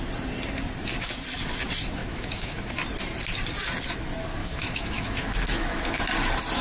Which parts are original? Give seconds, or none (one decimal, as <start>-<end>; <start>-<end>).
0.0-2.0; 2.7-4.4; 6.0-6.6